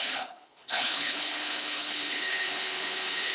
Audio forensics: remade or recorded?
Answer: remade